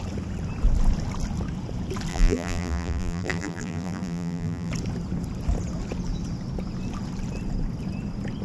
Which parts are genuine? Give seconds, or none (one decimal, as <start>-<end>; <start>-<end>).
0.0-2.1; 4.7-8.4